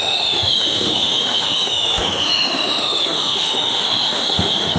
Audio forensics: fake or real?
fake